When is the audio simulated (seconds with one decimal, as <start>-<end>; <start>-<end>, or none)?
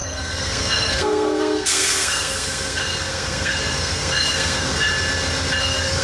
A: 0.0-4.9; 5.6-6.0